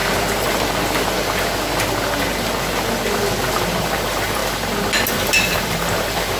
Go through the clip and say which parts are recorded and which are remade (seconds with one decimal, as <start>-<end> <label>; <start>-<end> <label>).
0.0-3.8 recorded; 3.8-4.4 remade; 4.4-5.1 recorded; 5.1-6.4 remade